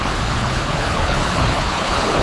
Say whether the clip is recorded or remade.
remade